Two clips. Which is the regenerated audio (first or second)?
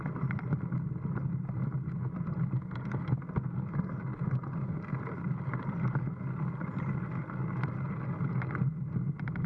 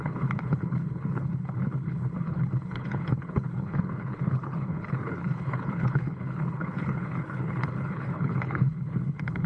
second